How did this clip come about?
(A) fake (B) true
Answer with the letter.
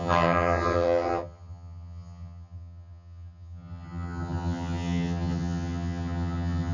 A